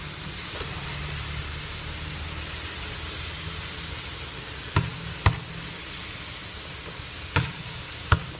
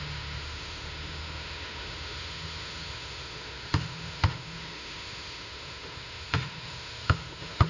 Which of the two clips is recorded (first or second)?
first